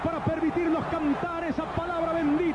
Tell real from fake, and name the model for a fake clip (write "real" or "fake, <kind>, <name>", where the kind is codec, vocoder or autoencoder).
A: real